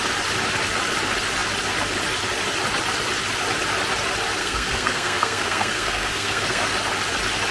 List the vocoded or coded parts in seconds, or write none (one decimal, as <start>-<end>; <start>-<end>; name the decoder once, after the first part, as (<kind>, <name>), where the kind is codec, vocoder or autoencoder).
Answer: 4.4-6.7 (codec, SNAC)